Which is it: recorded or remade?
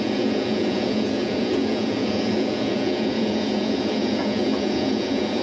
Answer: remade